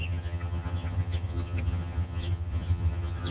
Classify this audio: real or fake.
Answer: fake